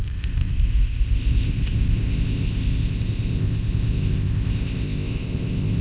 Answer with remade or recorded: remade